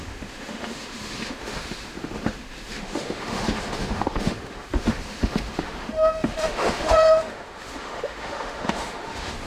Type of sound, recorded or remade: remade